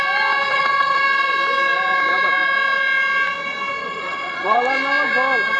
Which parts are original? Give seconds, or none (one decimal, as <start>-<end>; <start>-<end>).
0.0-0.5; 1.0-3.8; 4.6-5.6